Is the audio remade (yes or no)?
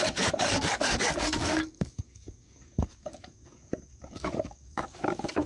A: yes